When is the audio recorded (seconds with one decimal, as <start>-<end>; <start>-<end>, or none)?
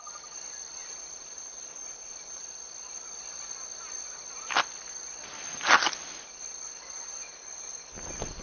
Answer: 0.0-0.8; 2.4-8.4